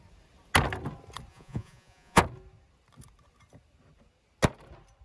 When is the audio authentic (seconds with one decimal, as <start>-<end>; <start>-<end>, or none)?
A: 0.0-1.3; 2.2-5.0